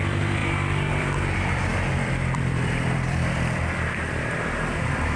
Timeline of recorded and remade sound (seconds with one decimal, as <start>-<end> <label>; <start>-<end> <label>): 0.0-0.4 remade; 0.4-0.9 recorded; 0.9-5.2 remade